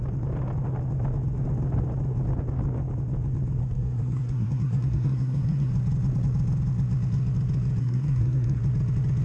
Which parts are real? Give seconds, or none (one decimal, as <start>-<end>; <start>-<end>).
0.0-3.6; 5.7-7.8; 8.6-9.2